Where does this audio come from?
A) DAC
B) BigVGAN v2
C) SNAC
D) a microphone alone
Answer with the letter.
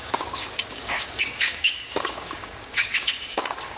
A